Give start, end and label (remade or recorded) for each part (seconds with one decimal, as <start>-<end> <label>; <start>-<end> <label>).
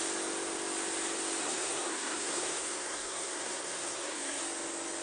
0.0-1.4 recorded; 1.4-4.4 remade; 4.4-5.0 recorded